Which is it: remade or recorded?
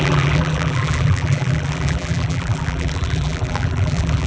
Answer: remade